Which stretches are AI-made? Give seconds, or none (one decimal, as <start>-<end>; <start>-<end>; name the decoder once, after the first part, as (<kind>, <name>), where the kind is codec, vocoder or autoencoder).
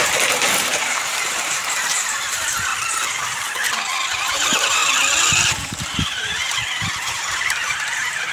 0.0-2.7 (vocoder, BigVGAN v2); 4.3-4.8; 5.5-6.4; 7.0-8.3